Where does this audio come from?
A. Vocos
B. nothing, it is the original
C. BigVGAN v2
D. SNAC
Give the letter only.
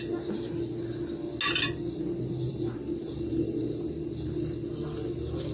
B